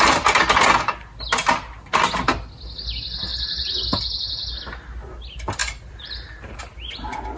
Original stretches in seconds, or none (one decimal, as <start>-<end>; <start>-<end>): 0.0-3.3; 4.5-5.6; 6.6-7.4